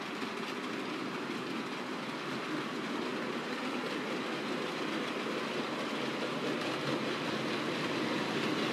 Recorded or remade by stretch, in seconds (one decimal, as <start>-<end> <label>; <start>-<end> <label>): 0.0-8.7 recorded